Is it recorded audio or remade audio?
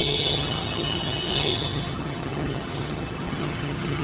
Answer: remade